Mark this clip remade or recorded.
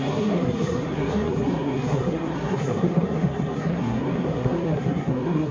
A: remade